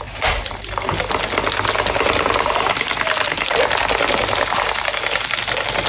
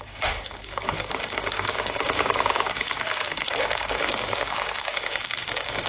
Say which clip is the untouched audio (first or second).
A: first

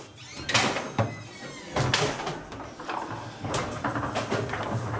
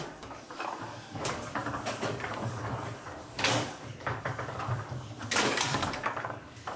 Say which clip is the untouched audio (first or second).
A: first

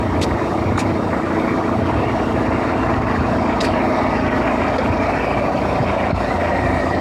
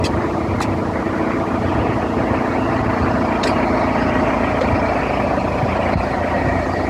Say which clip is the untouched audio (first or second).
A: second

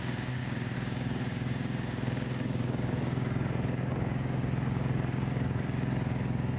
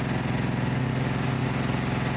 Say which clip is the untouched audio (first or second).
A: second